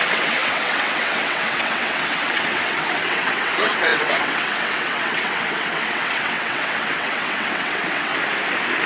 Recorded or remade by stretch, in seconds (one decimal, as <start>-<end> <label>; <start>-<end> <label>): 0.0-8.1 remade; 8.1-8.9 recorded